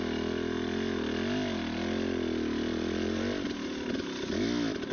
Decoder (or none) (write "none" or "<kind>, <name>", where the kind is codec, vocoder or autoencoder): none